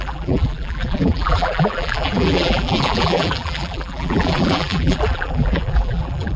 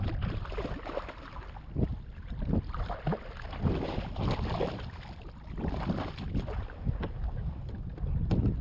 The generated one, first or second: first